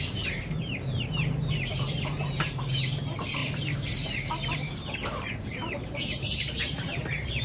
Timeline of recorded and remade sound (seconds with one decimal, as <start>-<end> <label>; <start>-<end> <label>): 0.0-7.4 remade